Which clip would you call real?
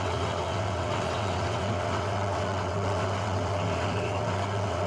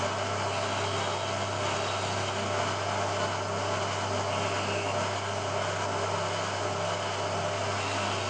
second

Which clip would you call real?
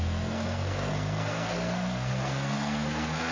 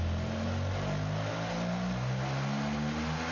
second